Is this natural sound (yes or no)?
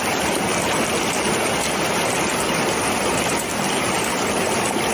yes